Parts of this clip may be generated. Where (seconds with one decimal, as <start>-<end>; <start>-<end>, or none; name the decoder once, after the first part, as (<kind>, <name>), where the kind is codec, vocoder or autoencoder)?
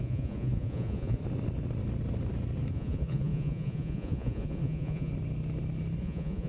0.0-1.2 (vocoder, Vocos); 2.7-5.1; 6.0-6.5